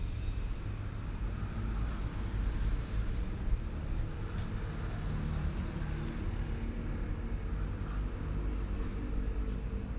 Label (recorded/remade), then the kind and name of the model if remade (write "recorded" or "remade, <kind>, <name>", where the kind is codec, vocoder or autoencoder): recorded